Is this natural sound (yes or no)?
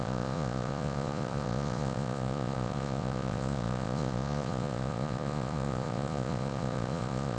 no